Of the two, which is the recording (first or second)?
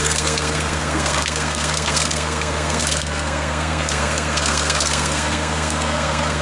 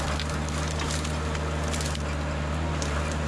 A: second